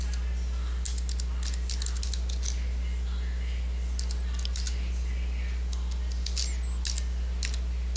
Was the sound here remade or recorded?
recorded